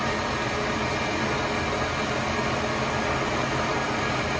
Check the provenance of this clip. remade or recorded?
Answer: recorded